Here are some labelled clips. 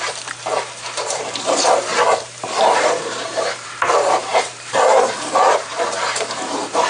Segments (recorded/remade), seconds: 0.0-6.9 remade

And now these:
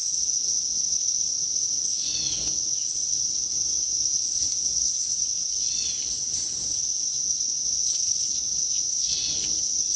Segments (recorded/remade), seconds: 0.0-0.9 remade; 0.9-4.1 recorded; 4.1-4.7 remade; 4.7-10.0 recorded

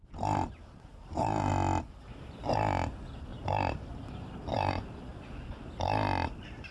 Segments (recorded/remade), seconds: 0.0-0.9 recorded; 0.9-1.5 remade; 1.5-3.3 recorded; 3.3-4.1 remade; 4.1-4.5 recorded; 4.5-5.1 remade; 5.1-6.7 recorded

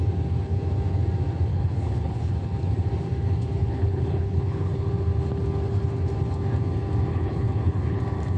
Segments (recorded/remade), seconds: 0.0-1.5 recorded; 1.5-2.3 remade; 2.3-3.6 recorded; 3.6-4.9 remade; 4.9-7.1 recorded; 7.1-8.0 remade; 8.0-8.4 recorded

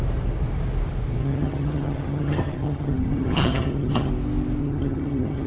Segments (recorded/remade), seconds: 0.0-1.2 recorded; 1.2-4.1 remade; 4.1-4.6 recorded; 4.6-5.5 remade